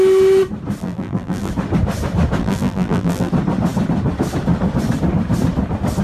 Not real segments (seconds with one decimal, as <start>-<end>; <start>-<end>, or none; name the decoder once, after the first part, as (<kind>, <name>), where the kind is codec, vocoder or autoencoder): 0.8-1.5 (vocoder, BigVGAN v2); 2.4-3.3